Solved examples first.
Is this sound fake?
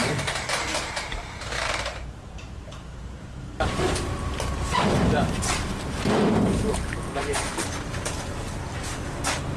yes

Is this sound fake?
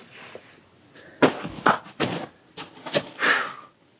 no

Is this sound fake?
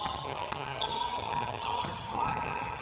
yes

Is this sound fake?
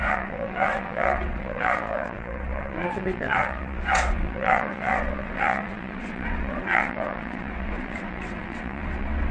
yes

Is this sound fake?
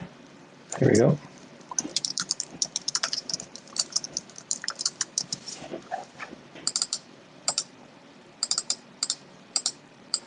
yes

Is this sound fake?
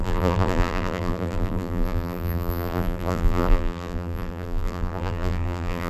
yes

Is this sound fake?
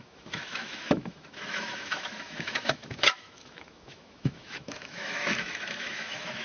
yes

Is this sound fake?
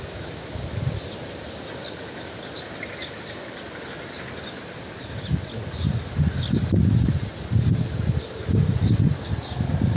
no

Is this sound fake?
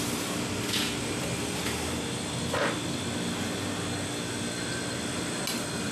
no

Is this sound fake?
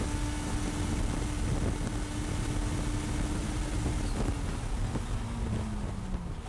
no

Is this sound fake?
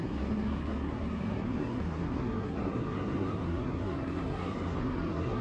yes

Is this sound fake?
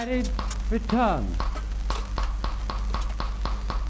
no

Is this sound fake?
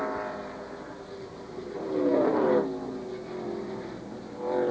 no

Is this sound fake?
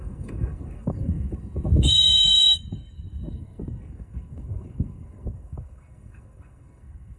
yes